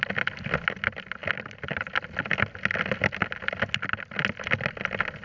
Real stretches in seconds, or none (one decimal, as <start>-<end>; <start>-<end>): 0.0-5.2

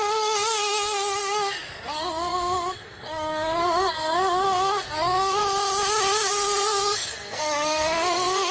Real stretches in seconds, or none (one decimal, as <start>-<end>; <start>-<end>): 5.4-6.3

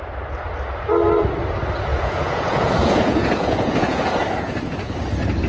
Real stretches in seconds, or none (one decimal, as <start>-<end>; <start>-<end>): 0.0-1.9; 5.0-5.5

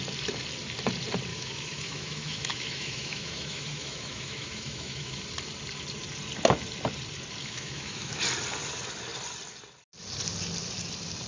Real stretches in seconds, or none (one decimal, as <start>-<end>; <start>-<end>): 0.0-1.3; 5.2-7.4; 8.2-11.3

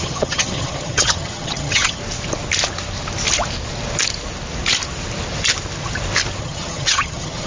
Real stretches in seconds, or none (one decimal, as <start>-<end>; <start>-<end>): 2.0-6.4